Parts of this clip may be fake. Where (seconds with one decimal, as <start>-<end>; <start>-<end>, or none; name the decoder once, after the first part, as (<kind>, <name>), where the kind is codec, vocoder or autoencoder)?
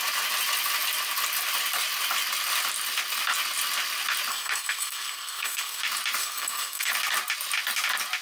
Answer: 4.3-5.8 (codec, SNAC); 6.2-6.9